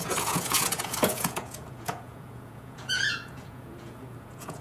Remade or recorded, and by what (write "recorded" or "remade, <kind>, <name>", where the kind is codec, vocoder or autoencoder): remade, vocoder, Vocos